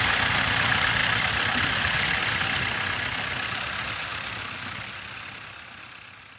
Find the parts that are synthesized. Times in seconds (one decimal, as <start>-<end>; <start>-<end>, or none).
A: 1.0-2.1; 4.1-4.6

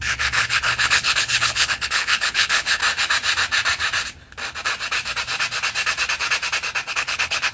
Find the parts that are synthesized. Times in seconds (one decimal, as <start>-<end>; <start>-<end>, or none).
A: 0.0-2.8; 6.9-7.5

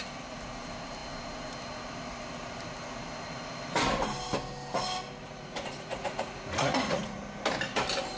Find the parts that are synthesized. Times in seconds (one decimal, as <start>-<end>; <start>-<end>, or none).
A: 5.2-7.2